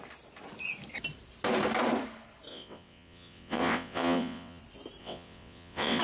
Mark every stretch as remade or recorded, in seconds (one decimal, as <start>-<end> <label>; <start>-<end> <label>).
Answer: 0.0-2.5 recorded; 2.5-4.6 remade; 4.6-5.0 recorded; 5.0-6.0 remade